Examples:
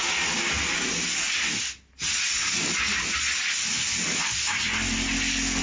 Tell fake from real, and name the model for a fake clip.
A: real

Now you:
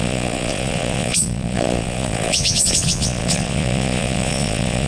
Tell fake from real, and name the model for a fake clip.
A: fake, vocoder, Vocos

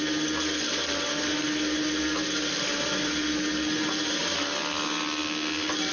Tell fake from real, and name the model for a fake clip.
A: real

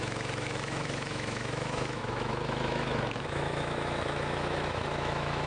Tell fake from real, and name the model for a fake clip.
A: fake, autoencoder, DAC-VAE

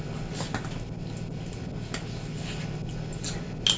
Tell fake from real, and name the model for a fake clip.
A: real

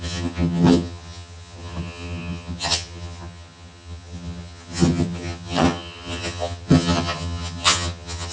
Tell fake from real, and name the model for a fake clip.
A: fake, vocoder, HiFi-GAN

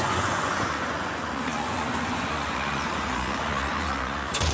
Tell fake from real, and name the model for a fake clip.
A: fake, vocoder, Vocos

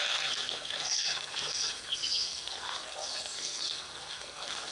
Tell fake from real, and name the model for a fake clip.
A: fake, codec, SNAC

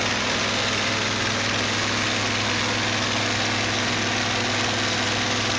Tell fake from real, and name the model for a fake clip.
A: real